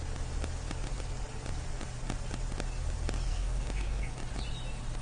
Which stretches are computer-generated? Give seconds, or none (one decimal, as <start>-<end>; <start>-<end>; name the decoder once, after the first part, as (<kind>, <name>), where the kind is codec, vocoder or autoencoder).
3.3-4.1 (codec, SNAC)